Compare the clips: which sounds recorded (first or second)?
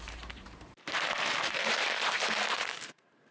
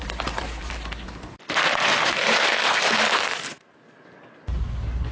second